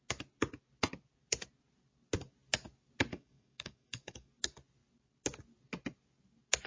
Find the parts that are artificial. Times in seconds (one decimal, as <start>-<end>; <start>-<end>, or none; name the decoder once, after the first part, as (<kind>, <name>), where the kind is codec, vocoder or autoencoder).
3.1-4.3 (codec, DAC)